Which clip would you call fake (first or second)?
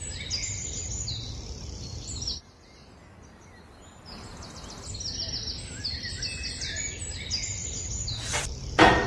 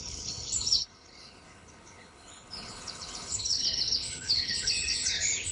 second